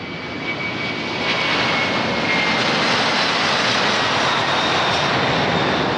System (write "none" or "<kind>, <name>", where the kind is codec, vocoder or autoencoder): none